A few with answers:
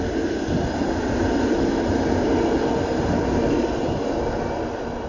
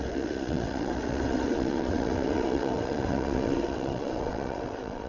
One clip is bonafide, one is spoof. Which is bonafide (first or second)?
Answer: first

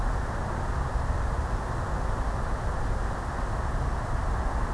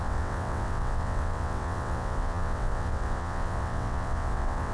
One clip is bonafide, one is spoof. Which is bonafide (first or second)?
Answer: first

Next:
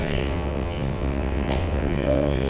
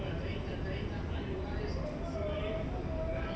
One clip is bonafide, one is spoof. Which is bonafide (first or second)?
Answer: second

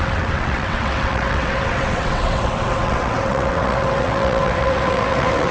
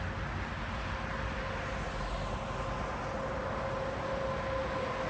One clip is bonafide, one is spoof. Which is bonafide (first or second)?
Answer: second